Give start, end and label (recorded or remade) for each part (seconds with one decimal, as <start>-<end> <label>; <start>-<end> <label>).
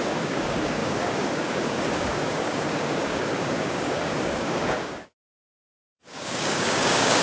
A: 0.0-7.2 remade